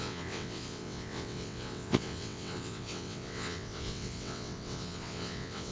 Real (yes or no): no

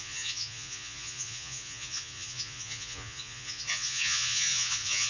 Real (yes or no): no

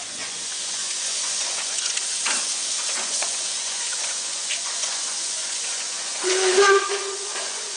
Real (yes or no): no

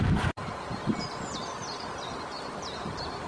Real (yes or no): yes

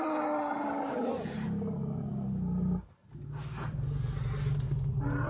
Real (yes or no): yes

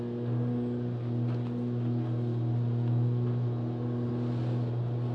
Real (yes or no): yes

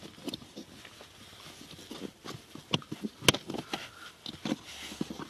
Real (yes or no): yes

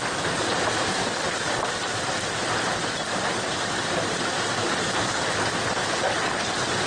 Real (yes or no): yes